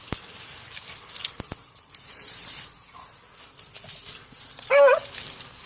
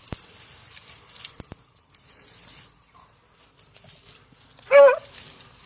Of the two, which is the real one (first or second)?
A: first